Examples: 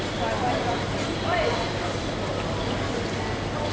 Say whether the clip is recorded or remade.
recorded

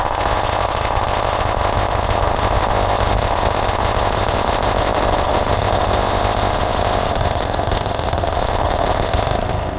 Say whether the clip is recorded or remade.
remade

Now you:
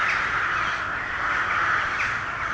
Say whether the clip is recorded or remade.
recorded